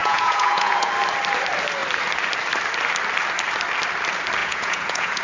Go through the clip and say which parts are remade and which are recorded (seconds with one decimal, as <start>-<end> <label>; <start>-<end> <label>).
0.0-0.9 remade; 0.9-4.4 recorded; 4.4-5.2 remade